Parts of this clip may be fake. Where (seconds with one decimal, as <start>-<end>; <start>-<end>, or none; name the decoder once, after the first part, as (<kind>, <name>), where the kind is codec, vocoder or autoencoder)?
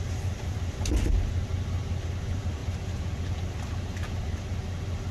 none